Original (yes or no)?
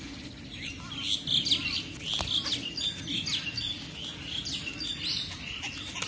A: yes